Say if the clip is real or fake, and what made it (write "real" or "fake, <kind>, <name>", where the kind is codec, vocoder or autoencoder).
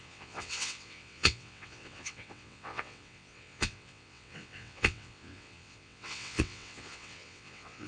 fake, vocoder, WaveNeXt